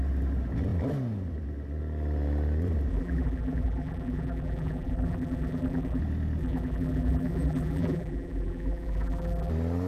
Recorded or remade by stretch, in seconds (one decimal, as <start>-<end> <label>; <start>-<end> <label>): 0.0-2.9 recorded; 2.9-6.0 remade; 6.0-6.4 recorded; 6.4-9.5 remade; 9.5-9.9 recorded